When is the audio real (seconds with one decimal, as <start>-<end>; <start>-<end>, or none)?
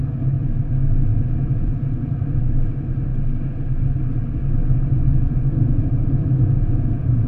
0.0-1.1; 1.7-4.6